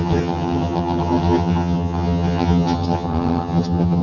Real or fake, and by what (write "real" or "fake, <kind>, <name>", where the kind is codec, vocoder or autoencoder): fake, vocoder, HiFi-GAN